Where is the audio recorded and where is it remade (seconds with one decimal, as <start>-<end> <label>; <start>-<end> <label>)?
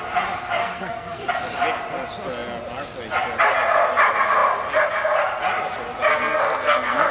0.0-0.6 recorded; 0.6-1.3 remade; 1.3-6.1 recorded; 6.1-7.1 remade